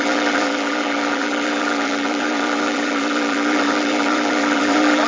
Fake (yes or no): yes